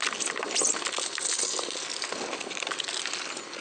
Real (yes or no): yes